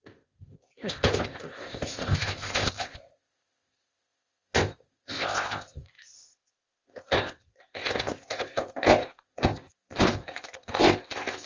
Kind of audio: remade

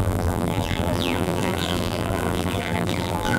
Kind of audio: remade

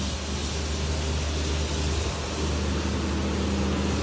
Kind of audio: recorded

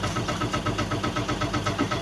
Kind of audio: recorded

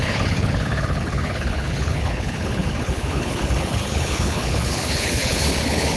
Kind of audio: remade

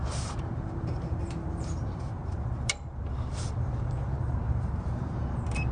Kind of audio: remade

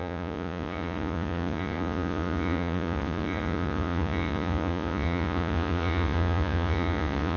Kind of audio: remade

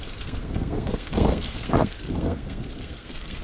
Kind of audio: remade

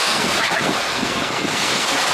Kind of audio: remade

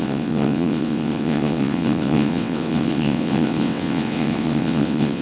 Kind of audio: remade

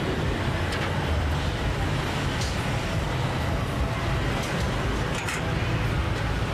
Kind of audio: recorded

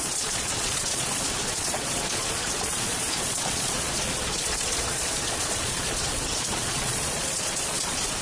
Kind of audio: remade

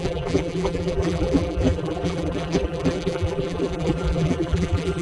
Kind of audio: remade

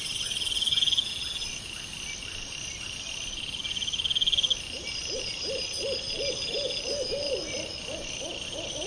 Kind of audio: recorded